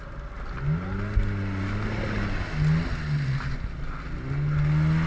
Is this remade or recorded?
recorded